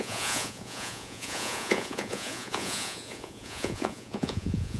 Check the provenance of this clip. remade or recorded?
remade